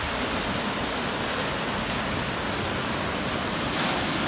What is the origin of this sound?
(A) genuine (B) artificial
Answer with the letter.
A